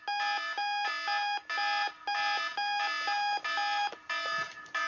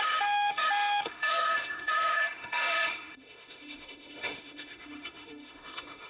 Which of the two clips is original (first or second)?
first